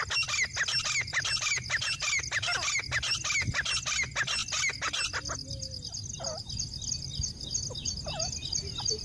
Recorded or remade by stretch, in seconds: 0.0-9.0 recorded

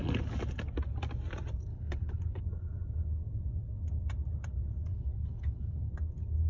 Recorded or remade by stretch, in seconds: 0.0-1.7 recorded; 1.7-2.4 remade; 2.4-4.9 recorded; 4.9-5.9 remade; 5.9-6.5 recorded

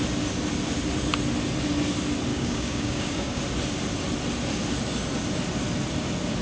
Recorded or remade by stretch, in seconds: 0.0-2.3 recorded; 2.3-3.4 remade; 3.4-6.4 recorded

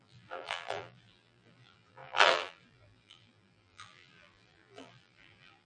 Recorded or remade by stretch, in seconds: 0.0-5.7 remade

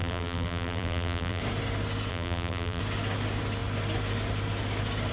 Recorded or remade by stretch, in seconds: 0.0-1.4 remade; 1.4-2.1 recorded; 2.1-2.8 remade; 2.8-5.1 recorded

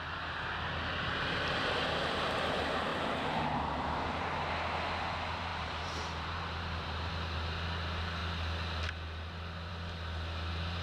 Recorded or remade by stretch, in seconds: 0.0-2.9 recorded; 2.9-4.0 remade; 4.0-5.5 recorded; 5.5-7.1 remade; 7.1-10.8 recorded

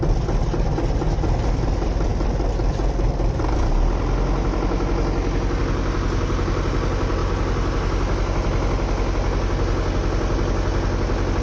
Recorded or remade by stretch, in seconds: 0.0-11.4 recorded